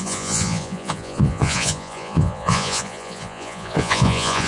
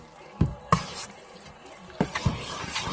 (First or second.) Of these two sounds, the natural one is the second